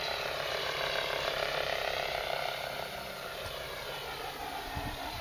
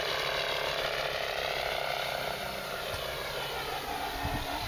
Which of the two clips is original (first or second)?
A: second